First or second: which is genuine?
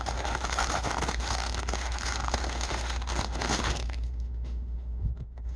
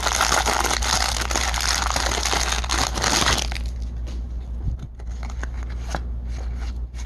second